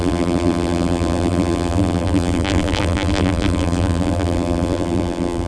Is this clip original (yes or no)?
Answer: no